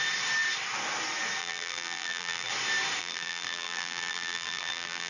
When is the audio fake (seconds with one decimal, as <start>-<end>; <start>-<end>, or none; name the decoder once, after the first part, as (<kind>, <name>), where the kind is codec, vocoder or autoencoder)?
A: 1.4-2.5 (vocoder, BigVGAN v2); 3.0-5.1